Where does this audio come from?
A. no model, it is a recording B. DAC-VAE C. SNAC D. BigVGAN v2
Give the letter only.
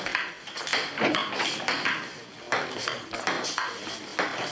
A